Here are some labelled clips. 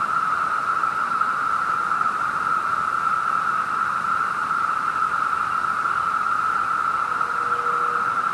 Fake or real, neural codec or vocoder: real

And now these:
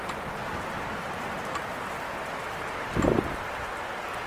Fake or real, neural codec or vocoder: real